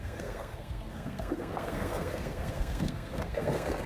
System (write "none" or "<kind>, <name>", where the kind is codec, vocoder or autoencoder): codec, SNAC